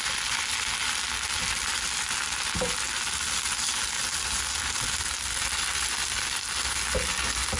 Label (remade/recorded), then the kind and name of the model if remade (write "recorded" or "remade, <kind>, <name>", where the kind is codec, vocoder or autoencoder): recorded